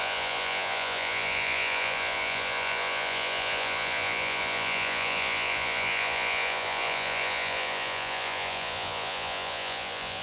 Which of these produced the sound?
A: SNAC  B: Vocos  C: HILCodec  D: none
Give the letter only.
B